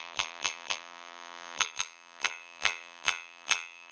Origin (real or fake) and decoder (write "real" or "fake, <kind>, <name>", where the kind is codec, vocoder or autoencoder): fake, vocoder, BigVGAN v2